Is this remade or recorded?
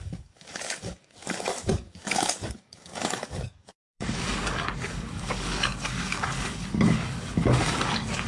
remade